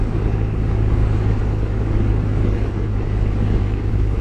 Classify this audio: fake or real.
fake